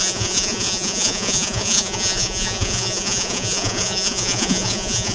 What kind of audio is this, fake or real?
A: fake